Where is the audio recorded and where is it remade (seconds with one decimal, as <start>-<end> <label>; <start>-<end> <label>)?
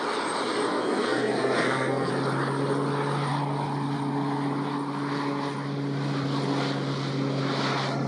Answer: 0.0-0.7 recorded; 0.7-2.1 remade; 2.1-8.1 recorded